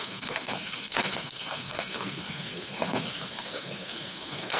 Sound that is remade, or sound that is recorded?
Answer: remade